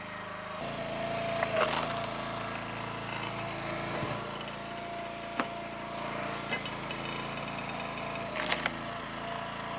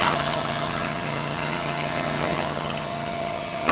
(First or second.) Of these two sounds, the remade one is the second